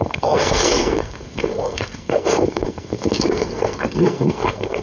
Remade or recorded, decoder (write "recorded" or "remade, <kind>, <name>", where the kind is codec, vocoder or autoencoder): remade, codec, SNAC